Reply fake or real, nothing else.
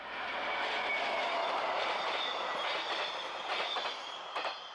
real